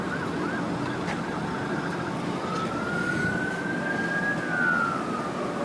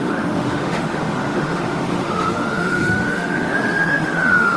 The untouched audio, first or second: first